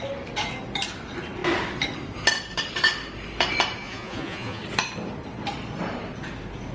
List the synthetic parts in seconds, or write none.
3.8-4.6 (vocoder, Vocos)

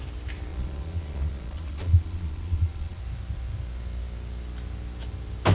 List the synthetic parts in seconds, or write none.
0.5-3.0 (vocoder, Vocos)

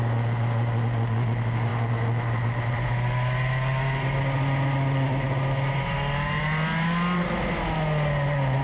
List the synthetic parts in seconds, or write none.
none

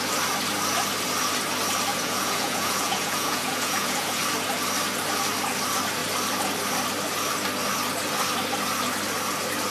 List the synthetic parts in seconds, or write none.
1.9-4.2 (vocoder, Vocos)

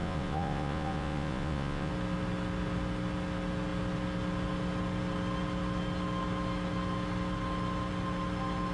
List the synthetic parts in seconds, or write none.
0.0-1.9 (vocoder, Vocos)